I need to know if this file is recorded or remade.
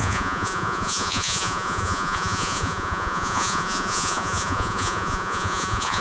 remade